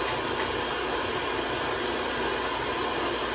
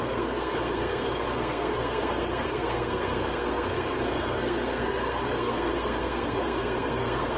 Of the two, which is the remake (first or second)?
second